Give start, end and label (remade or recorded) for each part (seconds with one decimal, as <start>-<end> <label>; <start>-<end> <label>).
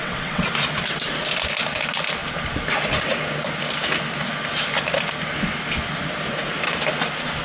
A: 0.0-0.5 remade; 0.5-7.4 recorded